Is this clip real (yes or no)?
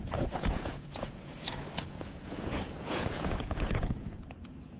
no